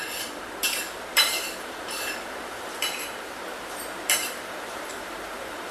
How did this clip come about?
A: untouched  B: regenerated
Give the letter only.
B